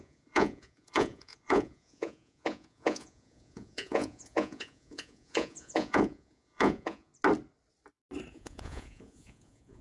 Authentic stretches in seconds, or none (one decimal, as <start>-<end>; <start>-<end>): 7.1-8.3